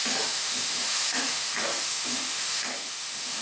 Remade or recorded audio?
remade